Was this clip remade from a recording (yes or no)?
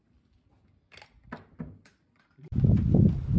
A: no